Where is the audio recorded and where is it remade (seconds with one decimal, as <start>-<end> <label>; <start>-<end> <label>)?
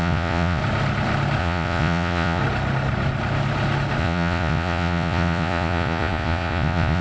0.0-0.6 remade; 0.6-1.4 recorded; 1.4-2.4 remade; 2.4-4.0 recorded; 4.0-7.0 remade